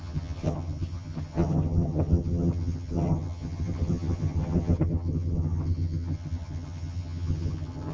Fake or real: fake